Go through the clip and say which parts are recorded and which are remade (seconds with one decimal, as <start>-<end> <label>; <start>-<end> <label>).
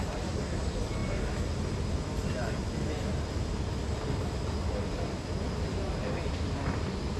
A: 0.0-7.2 recorded